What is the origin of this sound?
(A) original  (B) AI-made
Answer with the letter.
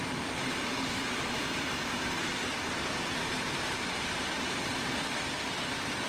B